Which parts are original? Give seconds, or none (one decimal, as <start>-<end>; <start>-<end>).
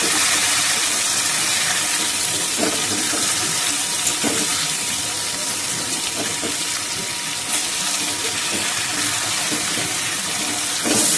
0.0-0.4; 3.3-4.5; 5.0-11.2